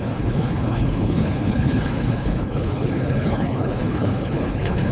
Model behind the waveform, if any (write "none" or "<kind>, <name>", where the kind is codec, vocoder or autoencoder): codec, HILCodec